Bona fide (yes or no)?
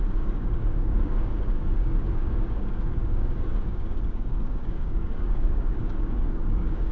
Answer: no